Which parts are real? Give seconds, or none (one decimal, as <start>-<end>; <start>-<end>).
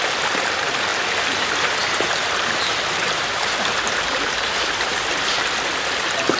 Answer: 0.0-0.9; 4.5-4.9; 5.5-6.4